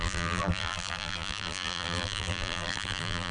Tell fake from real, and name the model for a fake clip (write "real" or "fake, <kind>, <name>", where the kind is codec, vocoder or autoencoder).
fake, vocoder, BigVGAN v2